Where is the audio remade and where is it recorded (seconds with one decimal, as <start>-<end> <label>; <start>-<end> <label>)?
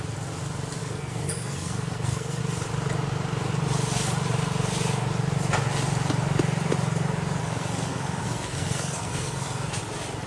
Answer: 0.0-0.8 recorded; 0.8-2.4 remade; 2.4-7.4 recorded; 7.4-9.8 remade; 9.8-10.3 recorded